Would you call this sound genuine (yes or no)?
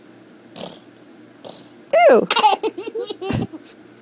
yes